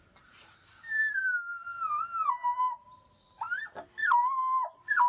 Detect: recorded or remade recorded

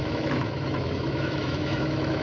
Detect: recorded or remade remade